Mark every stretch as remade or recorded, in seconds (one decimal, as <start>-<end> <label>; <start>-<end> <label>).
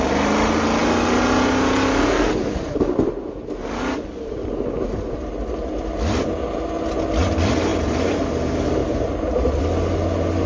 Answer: 0.0-8.8 recorded; 8.8-9.6 remade; 9.6-10.5 recorded